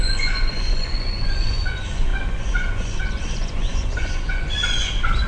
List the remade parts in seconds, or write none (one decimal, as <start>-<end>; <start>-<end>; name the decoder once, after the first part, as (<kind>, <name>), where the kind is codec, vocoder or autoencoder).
0.0-5.3 (vocoder, Vocos)